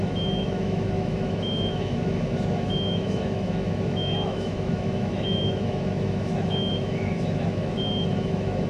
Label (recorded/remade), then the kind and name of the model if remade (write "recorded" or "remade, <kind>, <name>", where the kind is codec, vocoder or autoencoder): remade, autoencoder, DAC-VAE